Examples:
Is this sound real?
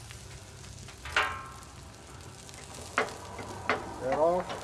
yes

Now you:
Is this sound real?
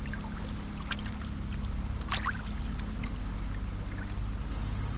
yes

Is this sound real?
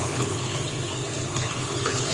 no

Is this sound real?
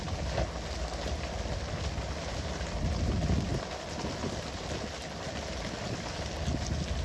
yes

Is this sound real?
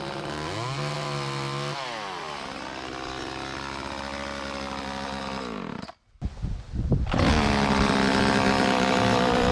yes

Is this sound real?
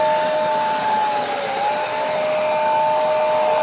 yes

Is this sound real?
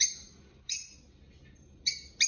yes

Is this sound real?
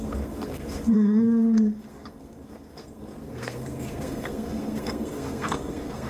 no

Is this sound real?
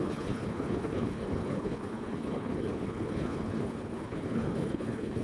no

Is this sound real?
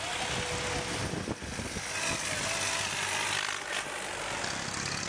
yes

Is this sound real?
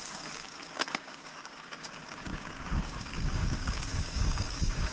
no